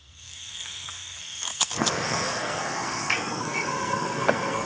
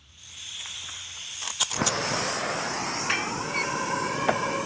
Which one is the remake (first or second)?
first